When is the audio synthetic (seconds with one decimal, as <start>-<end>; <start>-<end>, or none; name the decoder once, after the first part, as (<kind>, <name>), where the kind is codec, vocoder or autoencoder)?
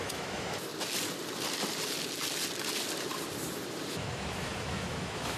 0.0-0.7 (autoencoder, DAC-VAE); 3.9-5.4